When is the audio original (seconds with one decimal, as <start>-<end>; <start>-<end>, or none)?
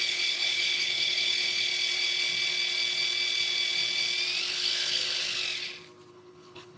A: 1.7-4.4; 5.4-6.1